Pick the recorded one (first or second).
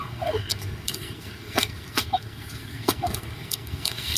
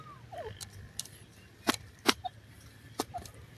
second